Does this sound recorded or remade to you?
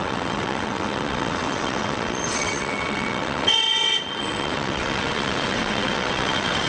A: remade